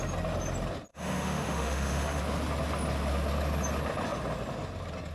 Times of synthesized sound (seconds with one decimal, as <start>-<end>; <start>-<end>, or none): 0.9-2.2